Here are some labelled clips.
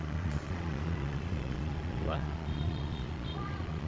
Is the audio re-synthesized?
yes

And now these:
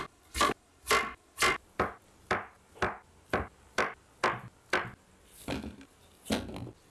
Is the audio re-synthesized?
no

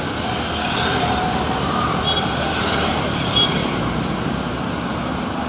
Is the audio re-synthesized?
no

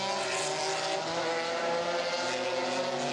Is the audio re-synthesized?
no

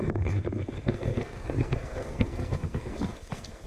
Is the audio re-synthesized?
yes